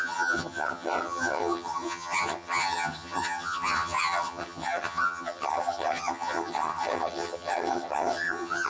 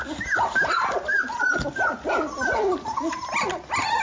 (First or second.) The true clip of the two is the second